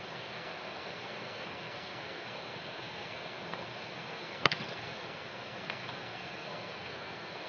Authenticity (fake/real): fake